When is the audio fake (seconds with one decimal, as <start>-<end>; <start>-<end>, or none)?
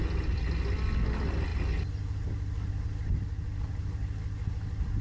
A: none